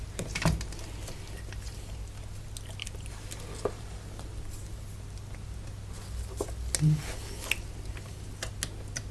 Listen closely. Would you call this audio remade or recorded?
recorded